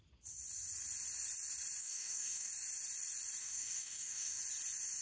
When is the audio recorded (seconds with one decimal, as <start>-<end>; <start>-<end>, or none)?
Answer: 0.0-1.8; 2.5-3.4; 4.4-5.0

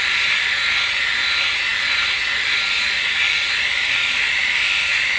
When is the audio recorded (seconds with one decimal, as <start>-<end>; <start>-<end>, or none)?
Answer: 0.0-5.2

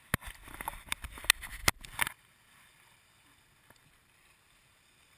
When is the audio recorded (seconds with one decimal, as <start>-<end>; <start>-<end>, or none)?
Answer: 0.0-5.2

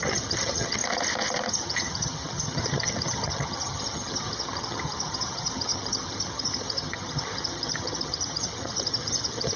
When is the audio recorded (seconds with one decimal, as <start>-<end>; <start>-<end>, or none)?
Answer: 0.8-1.5

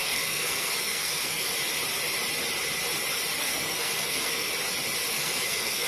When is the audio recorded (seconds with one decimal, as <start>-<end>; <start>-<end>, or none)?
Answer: 1.5-3.4; 4.5-5.1